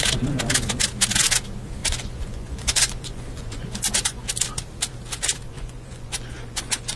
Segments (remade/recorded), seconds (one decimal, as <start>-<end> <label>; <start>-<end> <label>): 0.0-1.8 recorded; 1.8-4.2 remade; 4.2-5.5 recorded; 5.5-7.0 remade